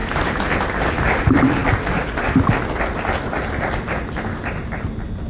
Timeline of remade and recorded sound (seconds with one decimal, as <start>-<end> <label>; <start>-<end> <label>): 0.0-0.5 remade; 0.5-5.3 recorded